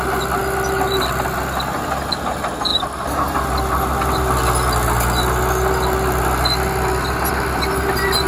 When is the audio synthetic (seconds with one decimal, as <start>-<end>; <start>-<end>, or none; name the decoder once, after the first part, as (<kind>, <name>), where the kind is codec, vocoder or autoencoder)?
none